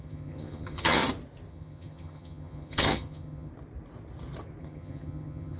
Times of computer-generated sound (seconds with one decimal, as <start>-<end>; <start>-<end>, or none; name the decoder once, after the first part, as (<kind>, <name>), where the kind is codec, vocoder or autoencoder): 0.0-1.0 (vocoder, HiFi-GAN); 1.5-3.5; 4.6-5.6